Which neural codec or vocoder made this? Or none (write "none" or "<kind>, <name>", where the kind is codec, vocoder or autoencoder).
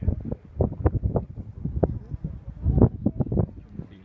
none